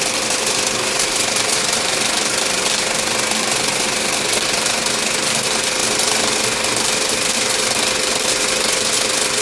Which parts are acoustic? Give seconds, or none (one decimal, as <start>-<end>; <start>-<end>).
0.0-9.4